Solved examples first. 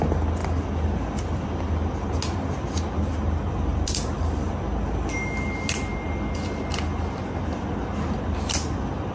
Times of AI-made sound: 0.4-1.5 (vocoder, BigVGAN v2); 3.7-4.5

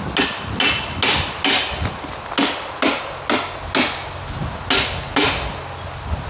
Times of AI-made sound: none

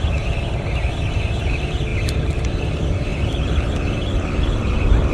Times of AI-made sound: 1.9-2.5 (vocoder, BigVGAN v2); 3.1-5.1

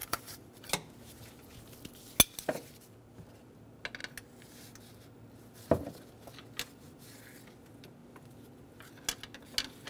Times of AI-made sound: 0.0-0.7 (vocoder, BigVGAN v2)

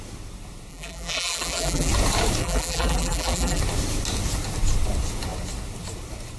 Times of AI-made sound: 0.7-1.9 (vocoder, BigVGAN v2); 2.4-3.6